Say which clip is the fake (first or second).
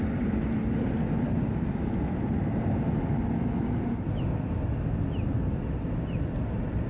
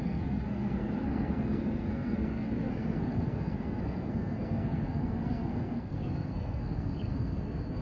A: second